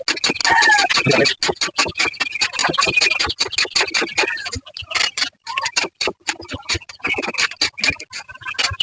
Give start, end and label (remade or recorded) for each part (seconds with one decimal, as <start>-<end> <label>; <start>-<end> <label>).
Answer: 0.0-4.8 recorded; 4.8-7.3 remade; 7.3-8.8 recorded